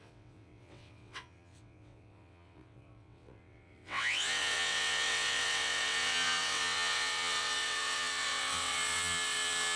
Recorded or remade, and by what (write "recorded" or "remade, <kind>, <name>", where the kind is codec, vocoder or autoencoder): remade, vocoder, WaveNeXt